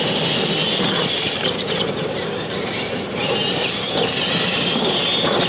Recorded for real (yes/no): yes